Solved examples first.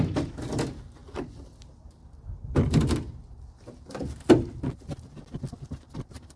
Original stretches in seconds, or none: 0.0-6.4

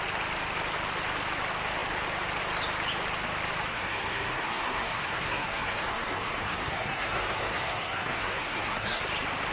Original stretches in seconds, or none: 0.0-3.7; 9.0-9.5

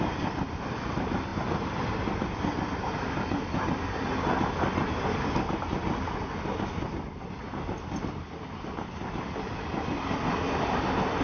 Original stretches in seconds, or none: 0.0-11.2

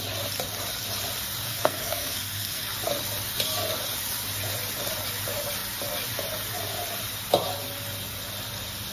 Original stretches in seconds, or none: 0.0-1.5; 2.7-8.9